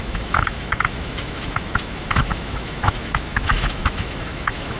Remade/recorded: remade